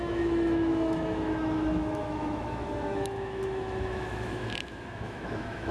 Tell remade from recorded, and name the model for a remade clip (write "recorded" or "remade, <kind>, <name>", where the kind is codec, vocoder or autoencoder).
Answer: remade, autoencoder, DAC-VAE